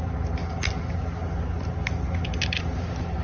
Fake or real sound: real